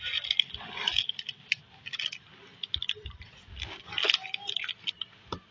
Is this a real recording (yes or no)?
yes